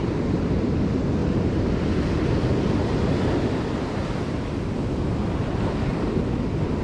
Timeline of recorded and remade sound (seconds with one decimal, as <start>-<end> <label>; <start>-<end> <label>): 0.0-1.2 recorded; 1.2-1.7 remade; 1.7-2.5 recorded; 2.5-3.4 remade; 3.4-4.0 recorded; 4.0-4.6 remade; 4.6-6.8 recorded